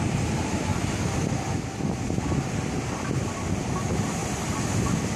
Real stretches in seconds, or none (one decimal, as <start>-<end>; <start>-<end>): 0.7-3.8; 4.2-5.2